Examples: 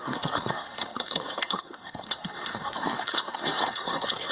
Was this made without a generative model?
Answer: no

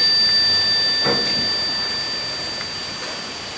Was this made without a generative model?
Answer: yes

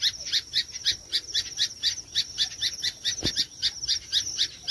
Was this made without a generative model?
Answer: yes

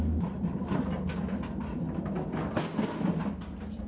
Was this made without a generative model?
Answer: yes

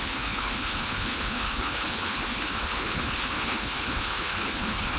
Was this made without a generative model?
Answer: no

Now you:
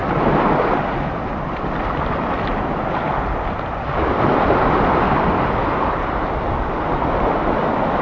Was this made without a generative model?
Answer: yes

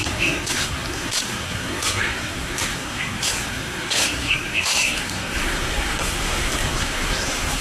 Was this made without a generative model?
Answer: no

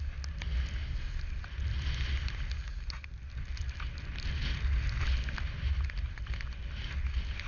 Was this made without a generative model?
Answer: yes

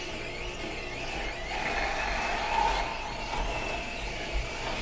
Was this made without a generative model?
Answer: yes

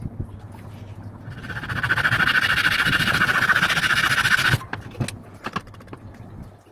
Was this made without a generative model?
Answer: yes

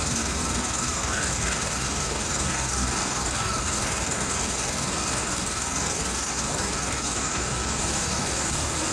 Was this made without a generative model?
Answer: no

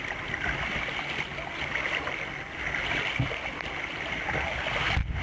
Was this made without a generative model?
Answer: yes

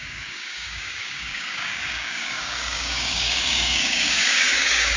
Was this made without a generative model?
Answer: no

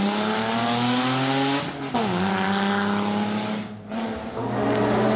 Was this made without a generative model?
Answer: yes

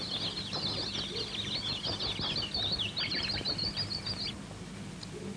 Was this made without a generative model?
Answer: yes